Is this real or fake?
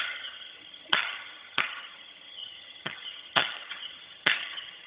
fake